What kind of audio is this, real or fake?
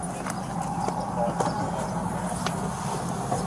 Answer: real